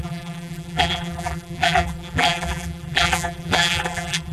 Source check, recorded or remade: remade